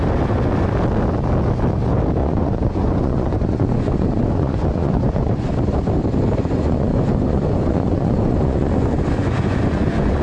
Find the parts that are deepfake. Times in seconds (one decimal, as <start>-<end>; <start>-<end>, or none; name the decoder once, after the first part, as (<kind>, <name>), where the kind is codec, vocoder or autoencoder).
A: 2.2-5.5 (vocoder, Vocos); 6.4-10.2